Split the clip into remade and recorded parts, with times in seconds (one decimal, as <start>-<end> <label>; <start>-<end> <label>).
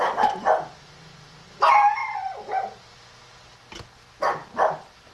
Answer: 0.0-2.0 recorded; 2.0-2.9 remade; 2.9-5.1 recorded